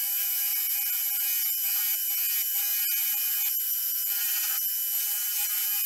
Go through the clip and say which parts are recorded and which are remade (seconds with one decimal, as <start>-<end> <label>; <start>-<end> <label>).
0.0-0.5 recorded; 0.5-1.1 remade; 1.1-3.5 recorded; 3.5-4.2 remade; 4.2-5.9 recorded